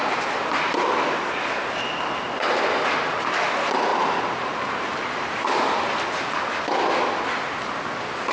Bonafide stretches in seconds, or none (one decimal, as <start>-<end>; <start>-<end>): 0.0-3.9; 5.7-8.3